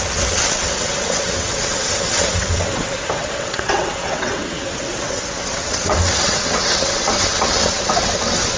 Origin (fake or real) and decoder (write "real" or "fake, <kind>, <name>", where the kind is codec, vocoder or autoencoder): fake, vocoder, WaveNeXt